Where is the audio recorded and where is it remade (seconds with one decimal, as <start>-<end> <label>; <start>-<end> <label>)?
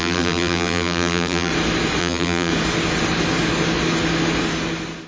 0.0-1.5 remade; 1.5-2.0 recorded; 2.0-2.5 remade; 2.5-5.1 recorded